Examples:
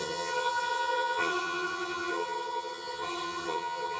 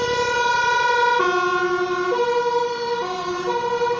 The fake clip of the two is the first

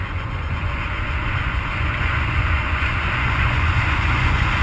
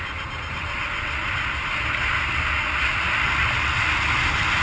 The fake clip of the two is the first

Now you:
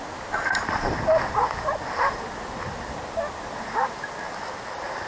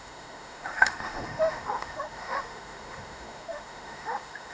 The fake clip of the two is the second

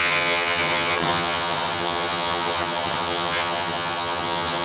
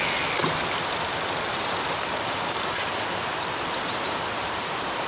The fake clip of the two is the first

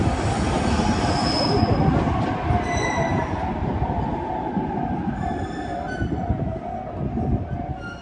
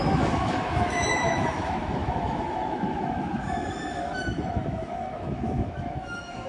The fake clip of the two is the second